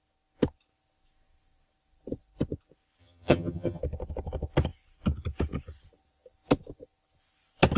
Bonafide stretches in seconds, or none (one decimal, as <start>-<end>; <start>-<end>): 0.0-3.0; 3.8-7.8